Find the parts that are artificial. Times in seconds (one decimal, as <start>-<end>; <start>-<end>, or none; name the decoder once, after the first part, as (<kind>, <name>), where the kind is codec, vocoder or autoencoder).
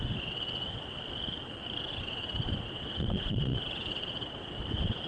0.0-0.9 (vocoder, WaveNeXt); 1.8-5.1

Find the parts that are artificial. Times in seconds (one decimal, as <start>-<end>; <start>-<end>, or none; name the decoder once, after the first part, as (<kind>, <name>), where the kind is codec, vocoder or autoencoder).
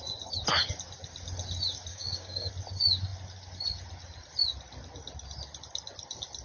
1.9-2.5 (codec, DAC)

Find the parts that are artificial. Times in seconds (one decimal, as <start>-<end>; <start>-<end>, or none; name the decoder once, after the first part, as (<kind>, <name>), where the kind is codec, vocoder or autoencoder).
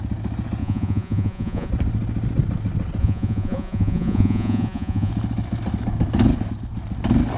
0.6-1.7 (vocoder, Vocos); 3.0-5.1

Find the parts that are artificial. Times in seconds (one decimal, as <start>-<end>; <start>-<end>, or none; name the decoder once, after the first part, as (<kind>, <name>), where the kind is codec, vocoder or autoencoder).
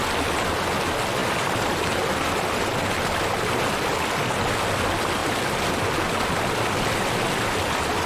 none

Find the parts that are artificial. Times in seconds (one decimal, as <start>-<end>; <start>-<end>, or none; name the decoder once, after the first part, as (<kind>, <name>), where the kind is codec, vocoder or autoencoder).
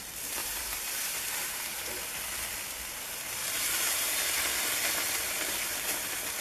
0.4-1.8 (vocoder, BigVGAN v2); 3.4-4.3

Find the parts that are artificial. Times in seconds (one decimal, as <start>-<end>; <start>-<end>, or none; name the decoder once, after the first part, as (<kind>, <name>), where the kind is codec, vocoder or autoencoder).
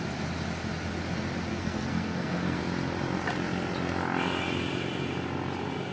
1.5-2.6 (codec, SNAC)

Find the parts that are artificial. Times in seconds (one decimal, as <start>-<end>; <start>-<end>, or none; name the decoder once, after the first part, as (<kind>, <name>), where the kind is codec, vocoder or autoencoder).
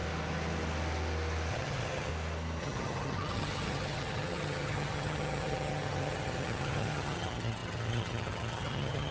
1.5-2.1 (vocoder, HiFi-GAN); 2.6-9.1